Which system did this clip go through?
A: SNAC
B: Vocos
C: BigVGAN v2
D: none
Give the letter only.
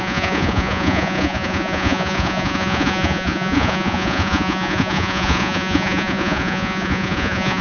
B